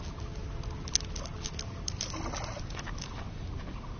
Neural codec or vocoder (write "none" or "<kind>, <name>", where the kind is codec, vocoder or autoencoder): none